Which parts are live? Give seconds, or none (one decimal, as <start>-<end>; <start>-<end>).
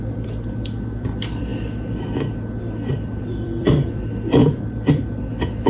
1.5-2.9